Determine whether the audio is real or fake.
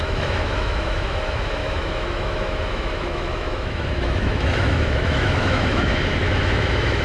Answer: fake